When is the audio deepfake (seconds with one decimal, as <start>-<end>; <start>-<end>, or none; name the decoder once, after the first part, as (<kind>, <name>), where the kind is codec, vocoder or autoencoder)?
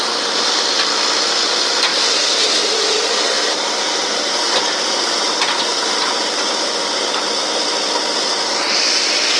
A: none